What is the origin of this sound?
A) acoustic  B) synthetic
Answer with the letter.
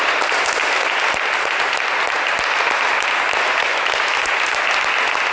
A